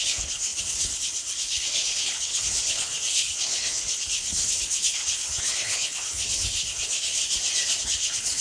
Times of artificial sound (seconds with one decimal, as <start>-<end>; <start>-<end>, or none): 0.0-7.2; 7.8-8.4